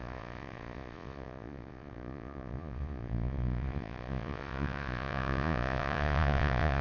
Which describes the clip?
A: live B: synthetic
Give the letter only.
B